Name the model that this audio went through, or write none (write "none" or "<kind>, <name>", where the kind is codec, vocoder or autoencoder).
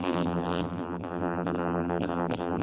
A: vocoder, BigVGAN v2